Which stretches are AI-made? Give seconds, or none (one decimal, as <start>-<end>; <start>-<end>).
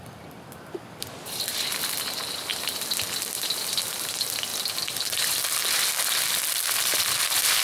0.0-2.5; 3.2-4.5; 6.5-7.6